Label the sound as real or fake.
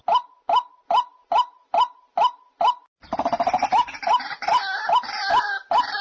real